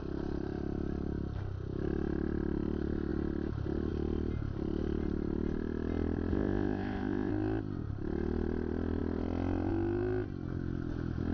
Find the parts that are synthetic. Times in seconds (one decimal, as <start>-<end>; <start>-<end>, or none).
6.3-7.3